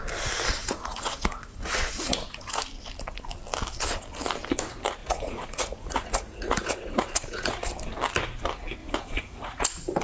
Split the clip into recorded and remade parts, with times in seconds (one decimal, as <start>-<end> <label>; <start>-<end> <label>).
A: 0.0-0.6 recorded; 0.6-2.6 remade; 2.6-5.0 recorded; 5.0-7.7 remade; 7.7-8.8 recorded; 8.8-10.0 remade